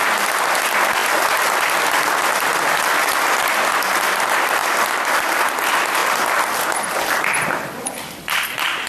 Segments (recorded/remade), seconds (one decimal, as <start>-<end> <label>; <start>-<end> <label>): 0.0-8.9 recorded